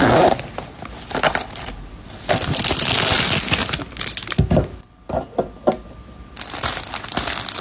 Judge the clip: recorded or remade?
recorded